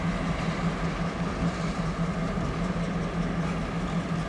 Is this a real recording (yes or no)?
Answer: yes